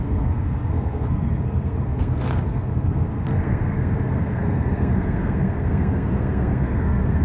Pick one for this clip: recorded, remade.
remade